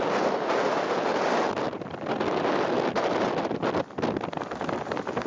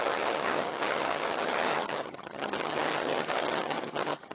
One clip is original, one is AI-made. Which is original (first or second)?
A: first